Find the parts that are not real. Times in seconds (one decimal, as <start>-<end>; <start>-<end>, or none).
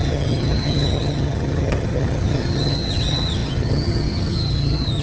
0.0-5.0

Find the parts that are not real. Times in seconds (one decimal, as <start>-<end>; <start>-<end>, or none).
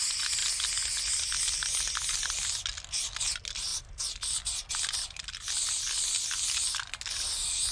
none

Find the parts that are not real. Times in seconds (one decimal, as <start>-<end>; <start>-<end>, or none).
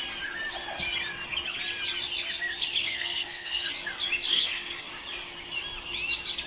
2.8-3.7; 4.3-4.9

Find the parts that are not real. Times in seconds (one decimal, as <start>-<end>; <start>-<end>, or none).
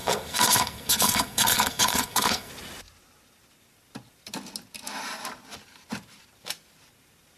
0.0-2.5